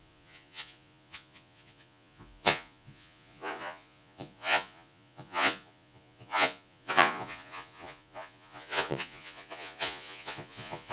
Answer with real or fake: fake